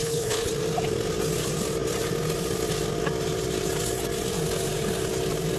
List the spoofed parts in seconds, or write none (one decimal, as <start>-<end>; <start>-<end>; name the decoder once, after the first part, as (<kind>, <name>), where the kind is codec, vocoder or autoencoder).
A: 0.0-0.5 (codec, HILCodec)